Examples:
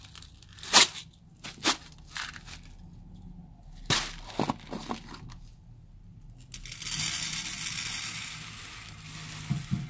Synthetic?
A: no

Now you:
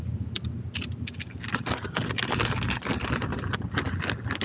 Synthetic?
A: no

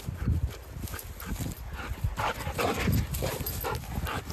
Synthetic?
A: no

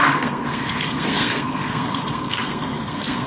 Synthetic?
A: yes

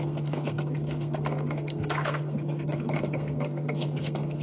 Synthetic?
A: yes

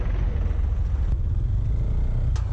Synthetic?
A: no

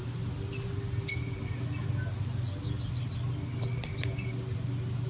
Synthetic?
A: no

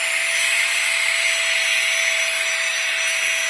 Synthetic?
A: no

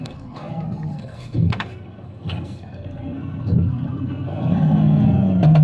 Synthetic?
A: yes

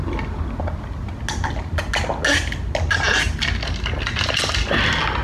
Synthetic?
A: no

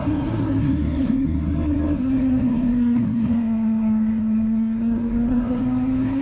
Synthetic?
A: yes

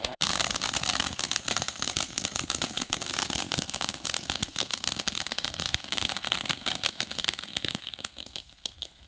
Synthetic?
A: yes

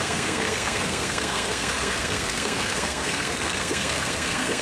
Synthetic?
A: yes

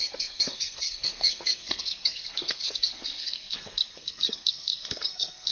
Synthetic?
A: yes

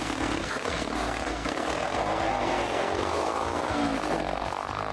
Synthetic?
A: yes